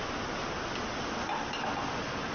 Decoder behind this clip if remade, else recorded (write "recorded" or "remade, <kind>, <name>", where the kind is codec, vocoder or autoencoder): recorded